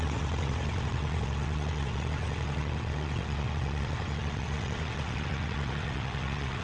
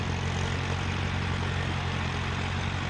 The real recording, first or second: second